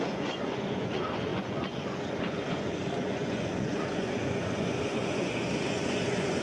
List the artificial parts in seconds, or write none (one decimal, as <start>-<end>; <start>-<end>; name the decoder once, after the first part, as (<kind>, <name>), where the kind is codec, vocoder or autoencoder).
0.0-6.4 (vocoder, Vocos)